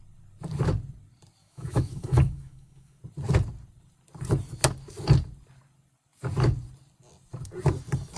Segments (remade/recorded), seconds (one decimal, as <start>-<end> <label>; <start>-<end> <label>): 0.0-1.4 recorded; 1.4-3.0 remade; 3.0-8.2 recorded